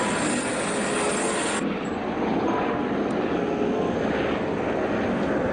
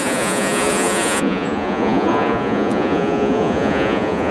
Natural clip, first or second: first